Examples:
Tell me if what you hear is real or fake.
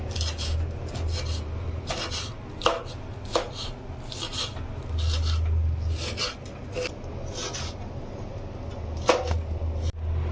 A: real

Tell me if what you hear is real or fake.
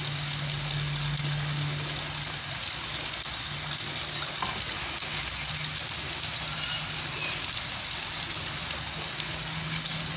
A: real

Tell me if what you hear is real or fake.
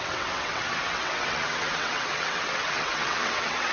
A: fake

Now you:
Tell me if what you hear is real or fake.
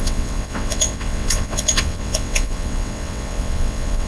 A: fake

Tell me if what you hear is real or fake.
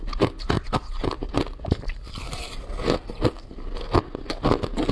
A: real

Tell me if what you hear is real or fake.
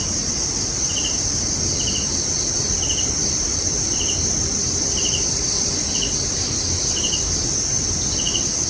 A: real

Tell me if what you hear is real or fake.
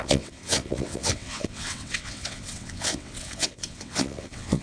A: fake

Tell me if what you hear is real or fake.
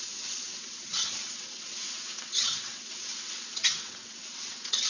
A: fake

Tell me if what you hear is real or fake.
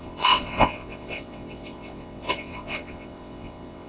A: fake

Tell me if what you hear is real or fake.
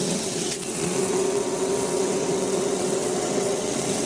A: fake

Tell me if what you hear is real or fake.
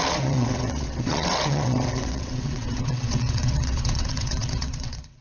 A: fake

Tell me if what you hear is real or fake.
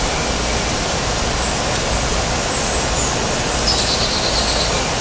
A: real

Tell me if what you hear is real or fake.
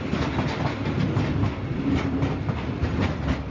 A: real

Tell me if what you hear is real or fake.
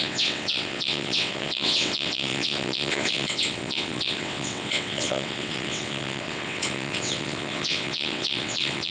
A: fake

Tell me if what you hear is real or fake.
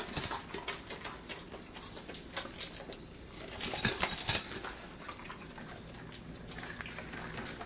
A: real